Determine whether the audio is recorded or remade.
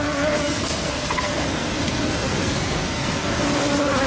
remade